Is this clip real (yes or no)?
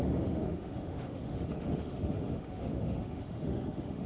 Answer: no